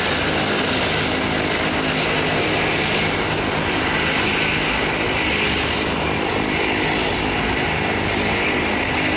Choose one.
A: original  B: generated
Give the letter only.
A